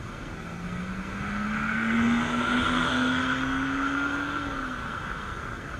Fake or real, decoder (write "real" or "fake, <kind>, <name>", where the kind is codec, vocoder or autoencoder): fake, codec, SNAC